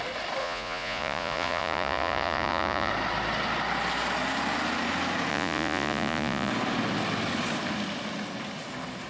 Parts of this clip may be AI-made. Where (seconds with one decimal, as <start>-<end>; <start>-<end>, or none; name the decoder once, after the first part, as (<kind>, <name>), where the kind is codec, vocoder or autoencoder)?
0.4-2.9 (vocoder, Vocos); 5.3-6.5